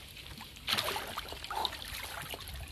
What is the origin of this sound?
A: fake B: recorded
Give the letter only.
B